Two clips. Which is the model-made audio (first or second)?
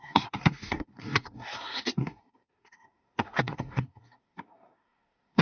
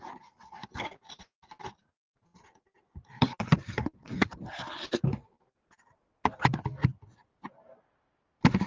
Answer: first